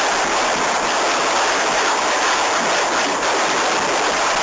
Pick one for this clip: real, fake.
real